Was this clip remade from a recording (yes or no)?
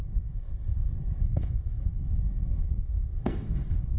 yes